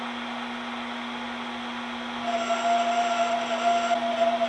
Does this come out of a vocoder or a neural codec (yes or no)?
no